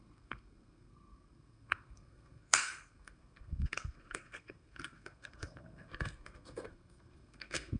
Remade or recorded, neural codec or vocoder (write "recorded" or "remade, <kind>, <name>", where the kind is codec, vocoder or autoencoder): remade, codec, SNAC